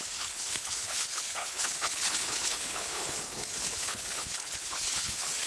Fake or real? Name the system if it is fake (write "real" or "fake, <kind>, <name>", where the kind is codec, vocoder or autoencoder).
fake, codec, HILCodec